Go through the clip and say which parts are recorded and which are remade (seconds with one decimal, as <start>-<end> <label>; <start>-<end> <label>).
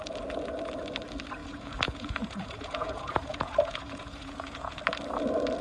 0.0-1.4 recorded; 1.4-4.8 remade; 4.8-5.6 recorded